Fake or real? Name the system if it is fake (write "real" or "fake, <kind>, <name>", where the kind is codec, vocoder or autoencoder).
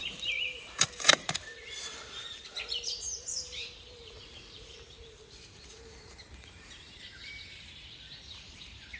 fake, vocoder, BigVGAN v2